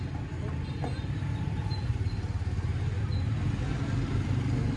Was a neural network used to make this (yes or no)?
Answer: no